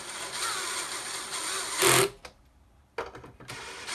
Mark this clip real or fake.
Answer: real